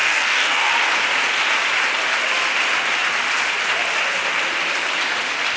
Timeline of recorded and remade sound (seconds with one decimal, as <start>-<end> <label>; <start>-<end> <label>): 0.0-0.7 remade; 0.7-5.6 recorded